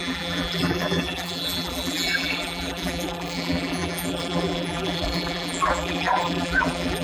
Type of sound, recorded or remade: remade